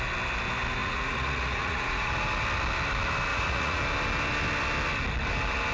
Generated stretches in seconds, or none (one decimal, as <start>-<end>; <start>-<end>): 0.8-2.1; 3.3-3.8